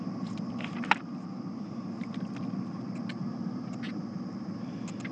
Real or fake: real